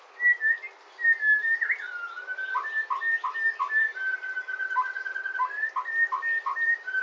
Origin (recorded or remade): recorded